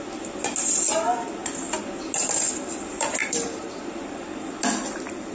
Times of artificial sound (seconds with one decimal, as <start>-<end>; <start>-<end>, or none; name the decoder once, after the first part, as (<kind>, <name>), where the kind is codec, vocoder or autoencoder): 3.2-4.0 (vocoder, BigVGAN v2)